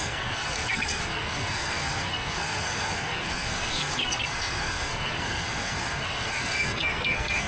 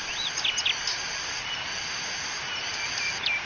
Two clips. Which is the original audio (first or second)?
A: second